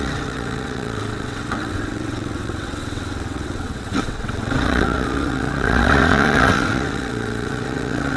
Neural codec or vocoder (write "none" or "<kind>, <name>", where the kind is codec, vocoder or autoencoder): vocoder, WaveNeXt